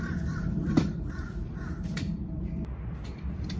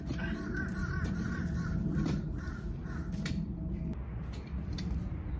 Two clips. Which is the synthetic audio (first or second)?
first